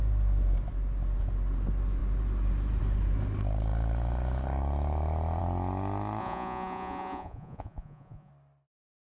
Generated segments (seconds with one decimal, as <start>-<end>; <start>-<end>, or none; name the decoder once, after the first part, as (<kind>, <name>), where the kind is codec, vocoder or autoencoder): 6.2-8.3 (vocoder, Vocos)